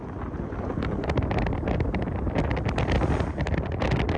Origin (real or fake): real